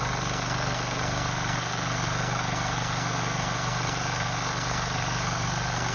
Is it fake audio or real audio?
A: fake